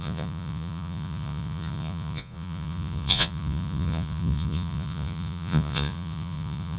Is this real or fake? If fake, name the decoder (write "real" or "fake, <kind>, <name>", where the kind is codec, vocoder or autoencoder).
fake, vocoder, Vocos